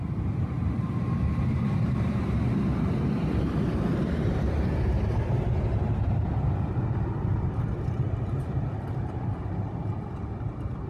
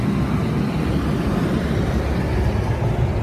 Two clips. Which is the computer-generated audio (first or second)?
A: first